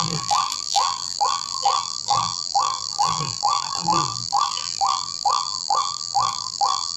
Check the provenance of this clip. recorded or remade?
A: remade